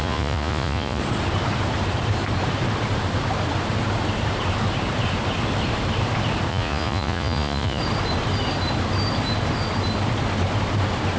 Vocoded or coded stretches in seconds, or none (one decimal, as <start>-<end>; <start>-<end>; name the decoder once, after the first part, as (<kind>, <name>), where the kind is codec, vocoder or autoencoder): 0.0-1.0 (vocoder, Vocos); 6.5-7.8

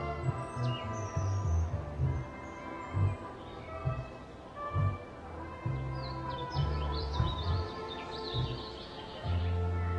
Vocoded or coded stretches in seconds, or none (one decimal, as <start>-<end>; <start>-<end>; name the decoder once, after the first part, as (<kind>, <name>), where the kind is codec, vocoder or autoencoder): 6.6-9.4 (vocoder, Vocos)

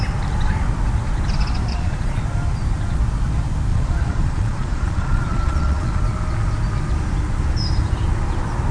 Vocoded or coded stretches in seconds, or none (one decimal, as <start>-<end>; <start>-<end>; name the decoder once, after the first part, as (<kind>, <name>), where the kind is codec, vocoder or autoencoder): 1.7-2.2 (vocoder, Vocos); 3.7-6.0

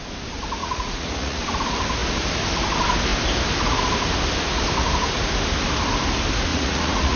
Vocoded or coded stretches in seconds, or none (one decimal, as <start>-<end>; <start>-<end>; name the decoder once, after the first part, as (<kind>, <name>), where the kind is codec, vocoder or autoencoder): 0.6-1.4 (vocoder, Vocos); 6.5-7.2

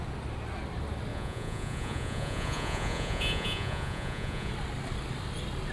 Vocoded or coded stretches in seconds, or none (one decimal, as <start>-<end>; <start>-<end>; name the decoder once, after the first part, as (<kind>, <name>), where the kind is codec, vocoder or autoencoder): 1.1-4.5 (vocoder, Vocos)

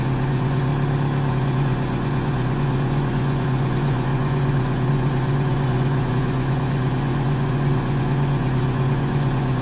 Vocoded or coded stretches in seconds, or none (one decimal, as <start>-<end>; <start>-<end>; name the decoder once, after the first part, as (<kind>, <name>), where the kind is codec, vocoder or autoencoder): 0.0-0.7 (vocoder, Vocos); 1.3-9.6